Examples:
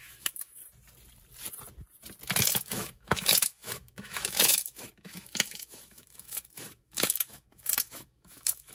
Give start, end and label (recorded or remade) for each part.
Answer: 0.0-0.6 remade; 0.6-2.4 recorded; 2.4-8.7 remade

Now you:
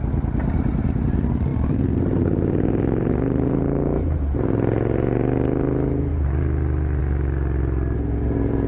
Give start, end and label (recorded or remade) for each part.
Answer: 0.0-6.1 recorded; 6.1-7.0 remade; 7.0-8.7 recorded

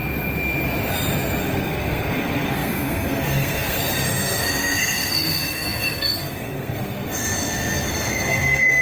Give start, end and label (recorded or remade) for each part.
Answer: 0.0-1.4 recorded; 1.4-8.8 remade

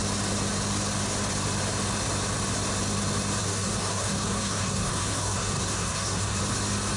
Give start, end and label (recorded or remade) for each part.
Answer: 0.0-3.4 recorded; 3.4-6.4 remade; 6.4-7.0 recorded

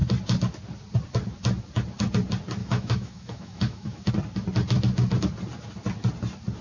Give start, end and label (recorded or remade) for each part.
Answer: 0.0-2.6 recorded; 2.6-4.1 remade; 4.1-6.6 recorded